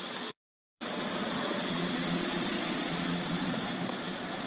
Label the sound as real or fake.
fake